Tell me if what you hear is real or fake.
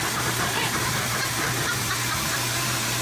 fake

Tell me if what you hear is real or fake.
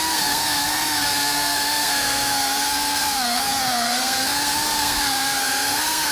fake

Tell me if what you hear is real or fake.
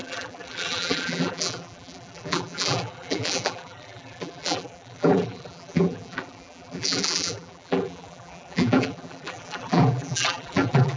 fake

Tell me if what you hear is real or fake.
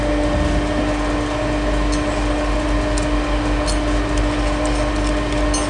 real